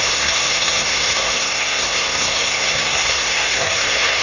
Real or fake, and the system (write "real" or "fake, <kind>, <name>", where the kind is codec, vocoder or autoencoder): fake, codec, SNAC